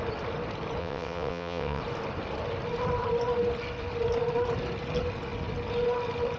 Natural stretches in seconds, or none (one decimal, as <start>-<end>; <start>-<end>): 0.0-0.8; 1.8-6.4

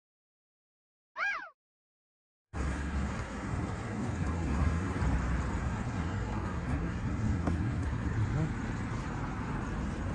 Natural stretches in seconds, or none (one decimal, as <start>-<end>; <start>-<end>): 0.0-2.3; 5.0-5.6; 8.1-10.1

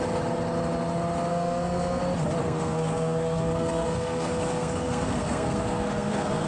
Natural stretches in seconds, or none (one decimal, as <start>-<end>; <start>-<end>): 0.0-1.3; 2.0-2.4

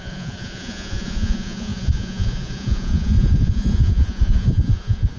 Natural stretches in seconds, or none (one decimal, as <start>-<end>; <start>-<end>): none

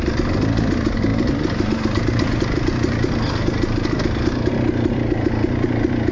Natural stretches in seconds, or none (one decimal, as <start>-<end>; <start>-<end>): 0.0-6.1

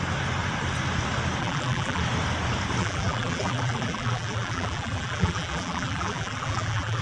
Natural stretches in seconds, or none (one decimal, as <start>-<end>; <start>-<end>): 0.0-1.4; 2.0-2.8

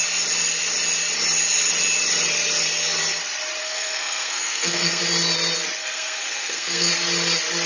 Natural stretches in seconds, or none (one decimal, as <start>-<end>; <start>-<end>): 0.0-3.6; 5.0-5.8; 6.9-7.7

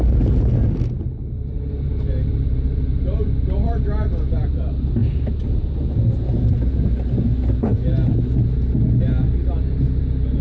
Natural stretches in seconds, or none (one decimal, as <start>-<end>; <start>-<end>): 0.0-10.4